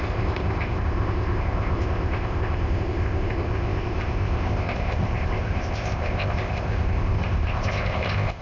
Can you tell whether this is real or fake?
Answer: fake